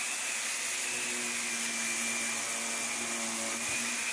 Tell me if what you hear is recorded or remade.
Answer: recorded